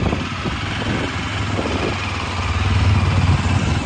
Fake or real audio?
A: real